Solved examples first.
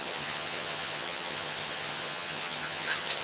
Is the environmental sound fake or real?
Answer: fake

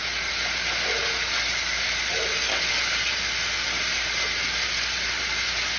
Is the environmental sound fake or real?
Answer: real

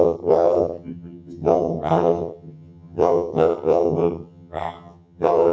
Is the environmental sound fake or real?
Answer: fake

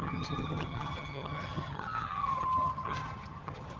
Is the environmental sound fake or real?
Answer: fake